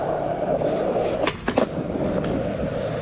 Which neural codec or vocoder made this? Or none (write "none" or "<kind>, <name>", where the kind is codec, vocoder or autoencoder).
vocoder, BigVGAN v2